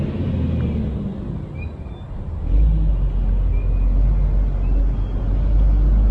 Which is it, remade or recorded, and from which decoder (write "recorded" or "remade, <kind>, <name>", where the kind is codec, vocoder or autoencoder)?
recorded